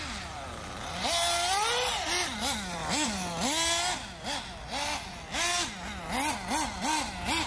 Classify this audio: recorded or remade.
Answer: recorded